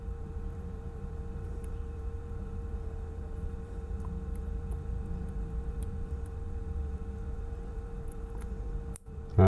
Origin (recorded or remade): remade